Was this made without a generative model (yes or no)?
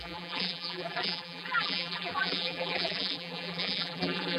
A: no